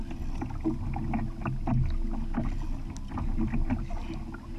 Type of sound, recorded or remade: recorded